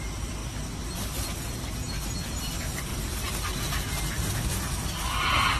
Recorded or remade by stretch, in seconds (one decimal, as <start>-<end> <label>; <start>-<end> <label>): 0.0-5.6 recorded